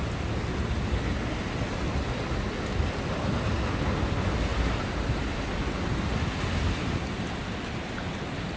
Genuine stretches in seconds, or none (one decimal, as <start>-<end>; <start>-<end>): 0.0-4.5; 5.3-8.6